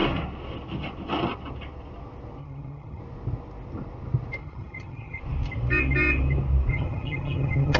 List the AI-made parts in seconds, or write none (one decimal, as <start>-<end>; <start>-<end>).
2.4-3.0; 4.4-5.2; 6.7-7.8